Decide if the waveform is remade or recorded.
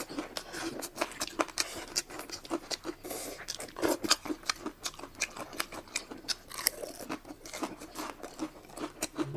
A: recorded